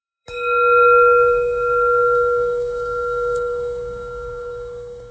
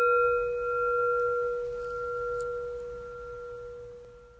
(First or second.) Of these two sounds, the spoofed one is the first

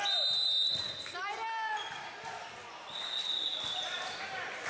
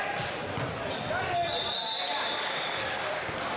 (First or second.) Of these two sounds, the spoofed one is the first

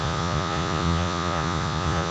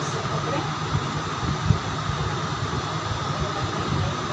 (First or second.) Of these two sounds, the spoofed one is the first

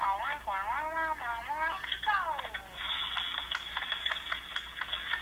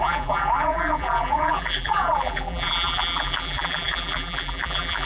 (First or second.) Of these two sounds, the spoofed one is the second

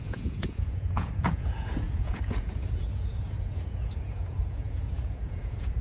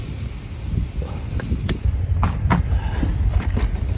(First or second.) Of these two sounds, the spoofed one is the first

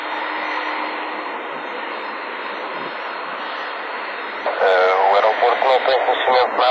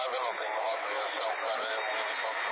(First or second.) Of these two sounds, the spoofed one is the second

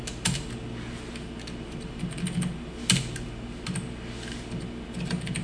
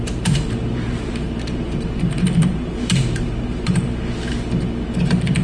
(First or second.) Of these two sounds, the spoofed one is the second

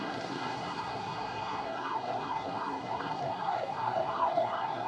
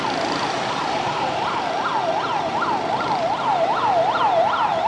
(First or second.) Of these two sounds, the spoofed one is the first